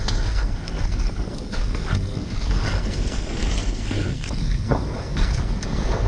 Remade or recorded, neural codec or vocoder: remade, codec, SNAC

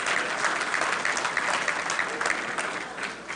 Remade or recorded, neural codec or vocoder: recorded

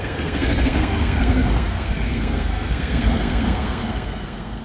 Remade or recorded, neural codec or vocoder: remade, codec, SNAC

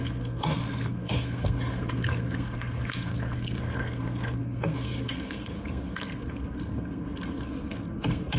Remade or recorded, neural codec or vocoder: remade, codec, SNAC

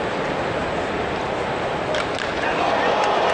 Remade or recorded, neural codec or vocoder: recorded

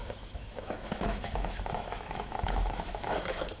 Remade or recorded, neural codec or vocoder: remade, autoencoder, DAC-VAE